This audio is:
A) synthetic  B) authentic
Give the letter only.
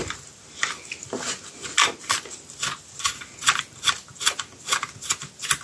B